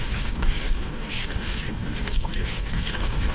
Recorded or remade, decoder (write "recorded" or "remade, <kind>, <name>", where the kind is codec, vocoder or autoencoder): remade, codec, DAC